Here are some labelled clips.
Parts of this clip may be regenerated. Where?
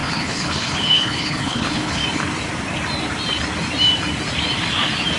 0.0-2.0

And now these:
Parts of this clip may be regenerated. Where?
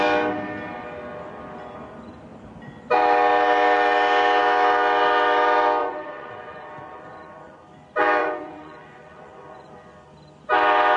5.8-7.6; 8.2-9.7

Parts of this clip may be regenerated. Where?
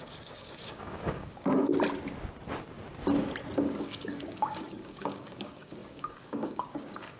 0.0-1.7; 3.6-7.2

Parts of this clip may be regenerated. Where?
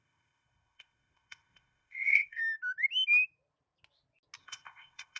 0.0-2.4; 4.4-5.2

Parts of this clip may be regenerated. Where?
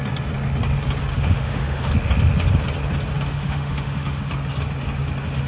1.1-1.9; 3.3-4.3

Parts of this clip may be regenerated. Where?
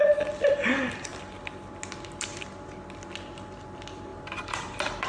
4.1-5.1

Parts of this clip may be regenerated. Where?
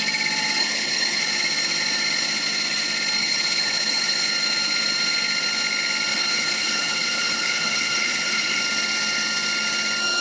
0.6-1.2; 3.2-4.3; 6.1-8.6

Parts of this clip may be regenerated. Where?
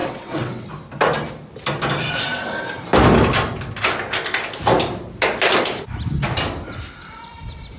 0.0-0.7